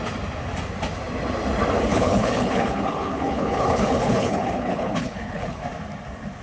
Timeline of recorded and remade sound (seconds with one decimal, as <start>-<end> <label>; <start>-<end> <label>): 0.0-1.9 recorded; 1.9-5.6 remade; 5.6-6.4 recorded